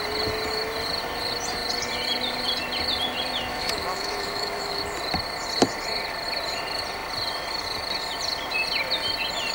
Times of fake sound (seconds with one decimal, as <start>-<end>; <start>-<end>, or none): 3.5-4.8